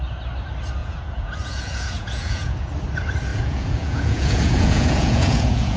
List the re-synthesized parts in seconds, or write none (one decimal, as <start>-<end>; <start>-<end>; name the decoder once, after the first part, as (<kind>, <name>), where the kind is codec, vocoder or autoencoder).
0.8-2.7 (vocoder, Vocos); 3.3-5.8